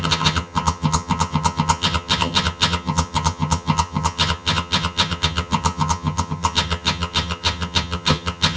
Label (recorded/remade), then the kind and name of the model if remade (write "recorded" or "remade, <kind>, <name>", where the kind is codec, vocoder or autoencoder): remade, vocoder, HiFi-GAN